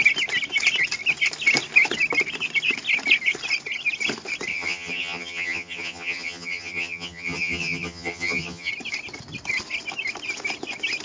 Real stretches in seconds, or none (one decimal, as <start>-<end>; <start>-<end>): 0.0-4.5; 8.7-11.0